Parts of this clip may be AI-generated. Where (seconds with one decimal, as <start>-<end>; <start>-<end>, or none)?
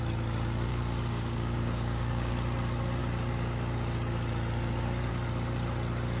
0.7-2.3